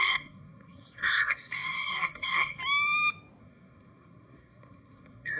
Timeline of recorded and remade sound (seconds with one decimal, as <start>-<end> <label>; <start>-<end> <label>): 0.0-2.6 remade; 2.6-3.4 recorded; 3.4-5.4 remade